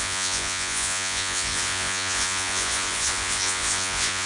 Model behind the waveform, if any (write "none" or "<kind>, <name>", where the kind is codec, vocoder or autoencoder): vocoder, Vocos